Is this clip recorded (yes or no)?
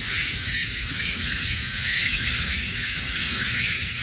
no